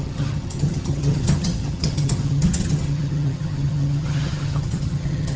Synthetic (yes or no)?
yes